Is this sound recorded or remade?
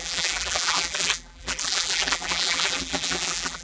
remade